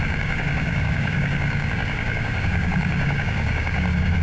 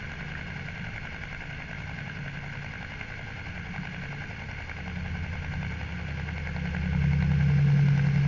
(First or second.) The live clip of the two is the second